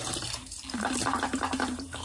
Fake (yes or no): yes